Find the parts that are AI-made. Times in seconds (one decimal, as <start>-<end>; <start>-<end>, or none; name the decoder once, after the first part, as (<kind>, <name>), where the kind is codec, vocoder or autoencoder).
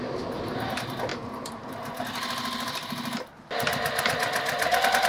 none